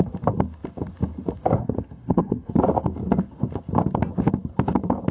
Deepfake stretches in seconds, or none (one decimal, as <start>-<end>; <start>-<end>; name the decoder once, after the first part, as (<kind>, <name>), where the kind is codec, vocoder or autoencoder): 1.6-2.5 (codec, SNAC)